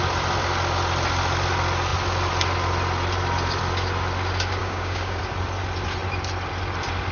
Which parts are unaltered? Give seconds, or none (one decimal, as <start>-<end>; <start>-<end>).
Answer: 0.0-4.6; 5.2-7.1